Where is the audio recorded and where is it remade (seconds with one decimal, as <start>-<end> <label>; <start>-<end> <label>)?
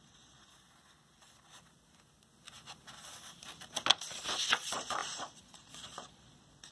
0.0-0.5 remade; 0.5-4.5 recorded; 4.5-6.7 remade